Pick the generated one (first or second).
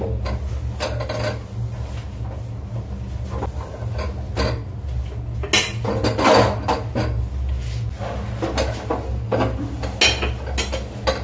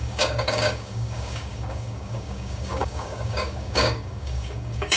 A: second